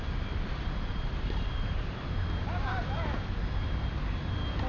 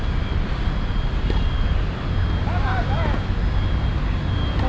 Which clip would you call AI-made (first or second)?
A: first